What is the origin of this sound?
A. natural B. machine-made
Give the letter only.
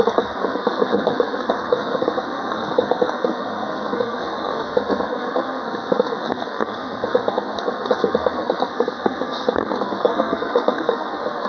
B